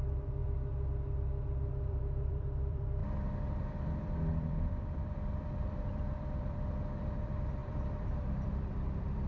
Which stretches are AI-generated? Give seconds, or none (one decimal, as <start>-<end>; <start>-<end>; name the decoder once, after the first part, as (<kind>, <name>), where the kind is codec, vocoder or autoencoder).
0.0-0.4 (vocoder, BigVGAN v2); 1.7-9.3